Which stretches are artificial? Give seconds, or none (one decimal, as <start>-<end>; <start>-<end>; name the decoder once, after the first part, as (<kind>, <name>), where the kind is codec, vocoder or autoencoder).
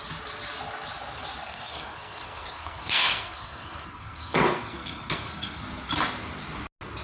1.4-5.6 (codec, SNAC)